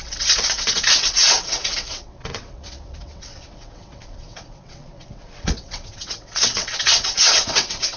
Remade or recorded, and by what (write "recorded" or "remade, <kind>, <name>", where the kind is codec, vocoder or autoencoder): remade, vocoder, WaveNeXt